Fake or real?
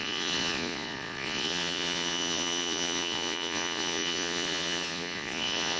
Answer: fake